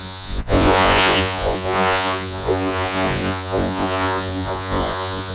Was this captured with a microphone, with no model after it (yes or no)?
no